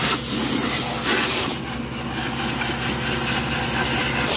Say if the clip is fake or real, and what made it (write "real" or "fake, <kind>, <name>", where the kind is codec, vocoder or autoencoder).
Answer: real